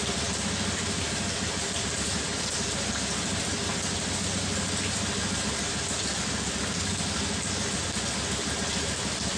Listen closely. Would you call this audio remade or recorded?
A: recorded